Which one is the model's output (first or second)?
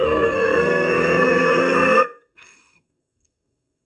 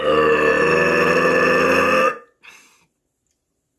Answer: first